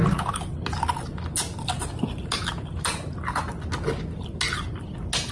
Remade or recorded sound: recorded